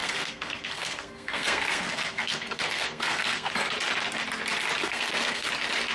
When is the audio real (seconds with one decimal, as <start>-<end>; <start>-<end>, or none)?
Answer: 3.5-4.8; 5.5-5.9